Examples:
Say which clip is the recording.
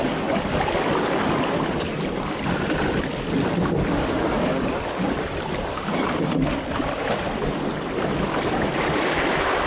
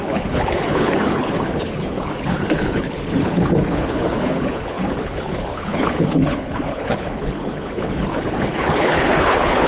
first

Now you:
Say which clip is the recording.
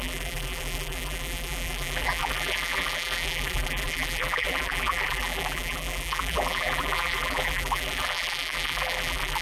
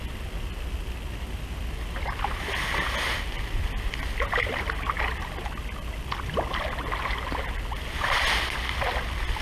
second